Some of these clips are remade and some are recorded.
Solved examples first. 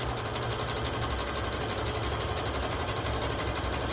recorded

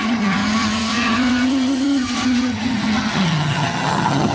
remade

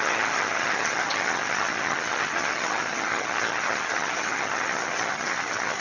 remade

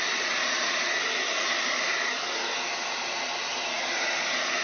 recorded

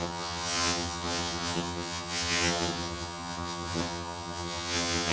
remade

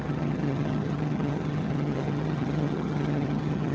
remade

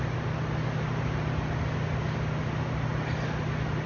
recorded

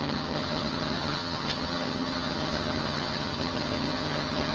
remade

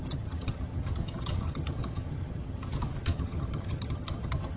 remade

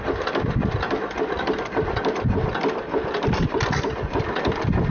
recorded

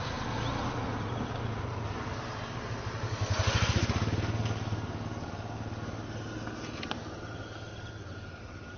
recorded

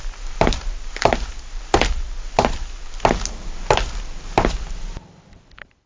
recorded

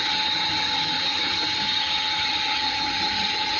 remade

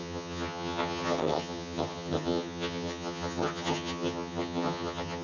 remade